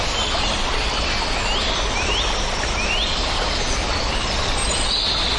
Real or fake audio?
real